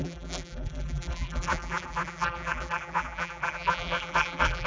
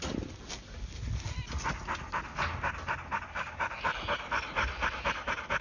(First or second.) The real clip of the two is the second